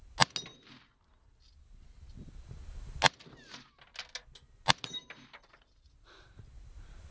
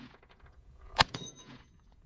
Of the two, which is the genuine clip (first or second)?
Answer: first